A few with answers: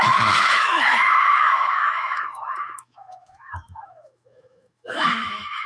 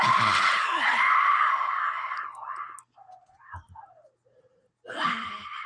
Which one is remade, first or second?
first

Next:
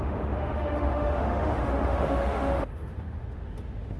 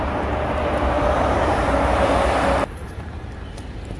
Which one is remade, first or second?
first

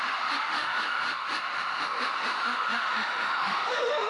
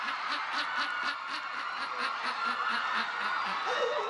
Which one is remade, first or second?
first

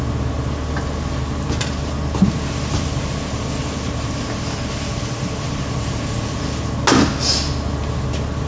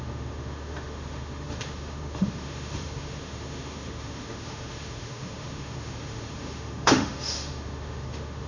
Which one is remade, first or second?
second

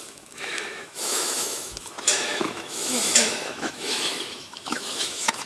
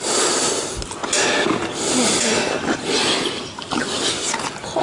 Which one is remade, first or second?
first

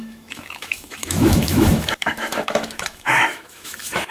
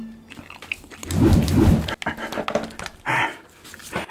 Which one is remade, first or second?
first